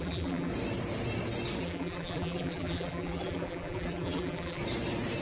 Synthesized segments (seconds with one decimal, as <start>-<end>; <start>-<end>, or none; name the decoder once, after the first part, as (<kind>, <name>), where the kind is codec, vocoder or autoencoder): 0.0-0.5 (vocoder, BigVGAN v2); 1.6-4.6